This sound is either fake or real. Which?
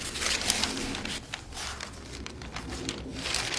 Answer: fake